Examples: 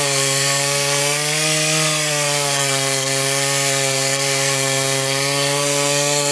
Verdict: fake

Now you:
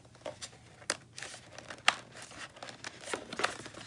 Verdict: real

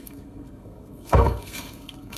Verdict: fake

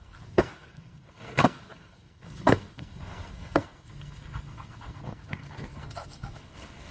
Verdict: fake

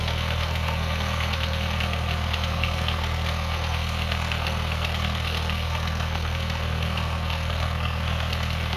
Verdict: fake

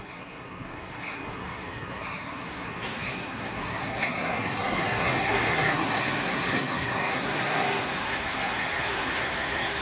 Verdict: fake